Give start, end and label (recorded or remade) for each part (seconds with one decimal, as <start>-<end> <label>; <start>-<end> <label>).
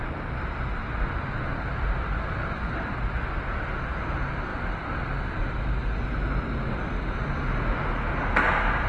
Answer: 0.0-0.8 recorded; 0.8-2.2 remade; 2.2-8.9 recorded